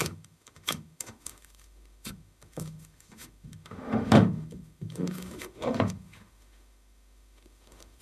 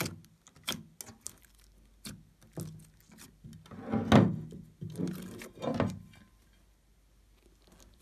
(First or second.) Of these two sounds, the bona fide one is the second